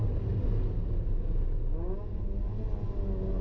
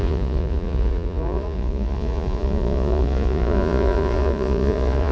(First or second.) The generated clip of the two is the second